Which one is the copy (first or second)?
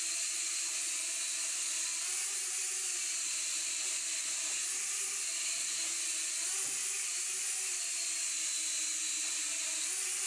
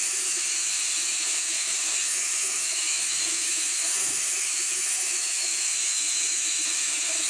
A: second